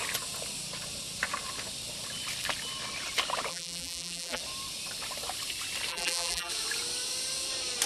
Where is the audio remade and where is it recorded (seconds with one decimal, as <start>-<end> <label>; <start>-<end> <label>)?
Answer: 0.0-3.5 recorded; 3.5-4.4 remade; 4.4-5.9 recorded; 5.9-6.5 remade; 6.5-7.9 recorded